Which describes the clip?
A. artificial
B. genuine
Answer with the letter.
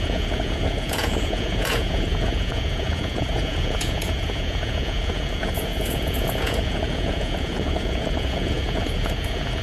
A